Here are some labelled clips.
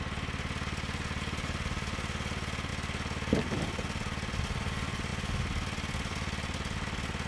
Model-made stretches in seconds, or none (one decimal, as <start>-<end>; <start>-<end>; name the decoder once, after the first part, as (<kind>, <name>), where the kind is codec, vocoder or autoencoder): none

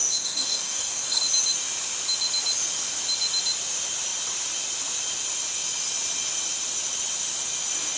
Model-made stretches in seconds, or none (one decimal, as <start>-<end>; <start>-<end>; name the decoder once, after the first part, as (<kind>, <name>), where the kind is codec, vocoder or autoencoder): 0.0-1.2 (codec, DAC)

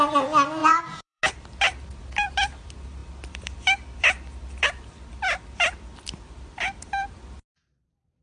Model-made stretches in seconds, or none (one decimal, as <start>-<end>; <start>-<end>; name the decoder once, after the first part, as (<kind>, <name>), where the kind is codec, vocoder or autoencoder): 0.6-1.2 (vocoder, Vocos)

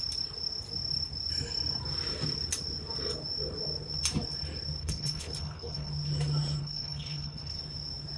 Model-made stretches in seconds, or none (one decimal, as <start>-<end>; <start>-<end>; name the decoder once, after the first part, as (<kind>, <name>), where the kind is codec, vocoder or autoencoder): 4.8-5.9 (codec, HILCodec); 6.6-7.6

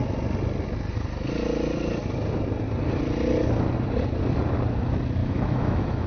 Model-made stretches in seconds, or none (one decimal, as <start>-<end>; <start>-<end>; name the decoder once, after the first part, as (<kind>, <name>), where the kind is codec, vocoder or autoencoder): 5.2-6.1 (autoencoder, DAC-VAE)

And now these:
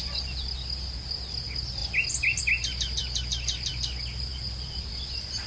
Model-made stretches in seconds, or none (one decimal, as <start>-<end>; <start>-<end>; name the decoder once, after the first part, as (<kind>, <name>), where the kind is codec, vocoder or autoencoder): none